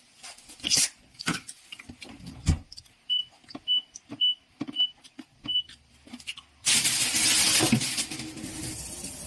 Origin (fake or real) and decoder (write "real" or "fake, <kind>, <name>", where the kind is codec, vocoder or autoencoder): real